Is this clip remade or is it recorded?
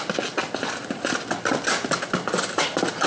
recorded